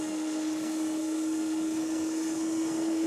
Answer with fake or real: fake